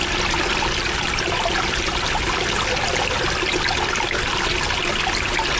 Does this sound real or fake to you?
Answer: real